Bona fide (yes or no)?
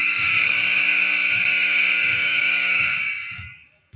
no